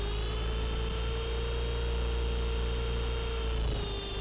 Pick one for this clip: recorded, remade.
recorded